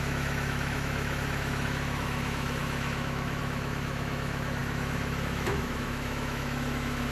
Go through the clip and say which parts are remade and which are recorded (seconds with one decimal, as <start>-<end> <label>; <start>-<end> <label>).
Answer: 0.0-7.1 remade